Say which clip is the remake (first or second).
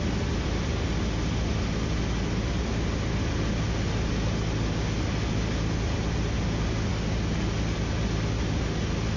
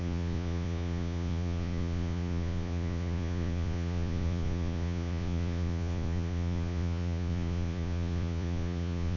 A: second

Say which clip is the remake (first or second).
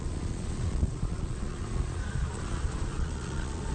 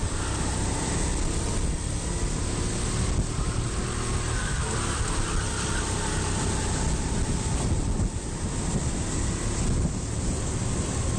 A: first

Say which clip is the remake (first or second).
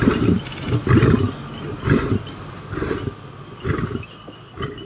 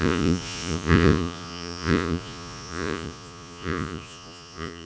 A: second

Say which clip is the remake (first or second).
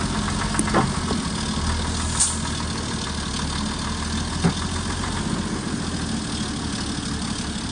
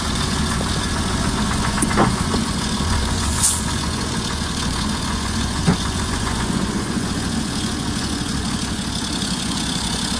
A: second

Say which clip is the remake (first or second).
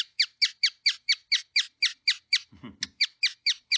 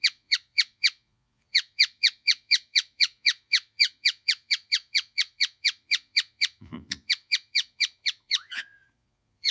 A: second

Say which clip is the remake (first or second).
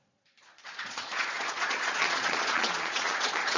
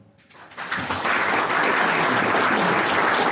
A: first